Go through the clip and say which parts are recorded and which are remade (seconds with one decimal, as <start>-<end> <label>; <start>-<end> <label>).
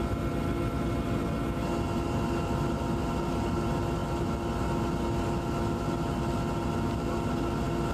0.0-7.9 recorded